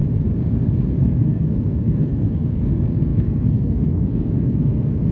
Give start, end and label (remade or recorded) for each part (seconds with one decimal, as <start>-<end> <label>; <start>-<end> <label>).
0.0-0.5 recorded; 0.5-5.1 remade